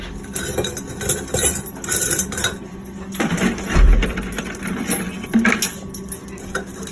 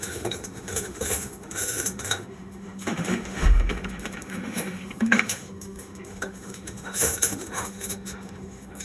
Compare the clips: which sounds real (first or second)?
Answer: first